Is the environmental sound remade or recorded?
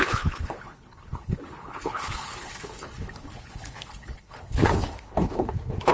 remade